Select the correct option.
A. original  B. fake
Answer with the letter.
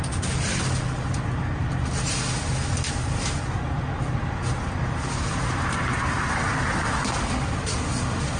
A